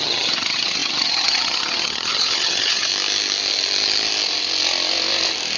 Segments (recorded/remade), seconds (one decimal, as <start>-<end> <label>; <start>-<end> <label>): 0.0-2.9 remade; 2.9-5.6 recorded